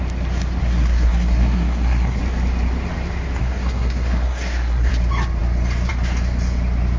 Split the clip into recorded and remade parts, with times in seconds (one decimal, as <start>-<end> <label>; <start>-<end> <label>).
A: 0.0-0.6 recorded; 0.6-2.2 remade; 2.2-3.4 recorded; 3.4-4.9 remade; 4.9-7.0 recorded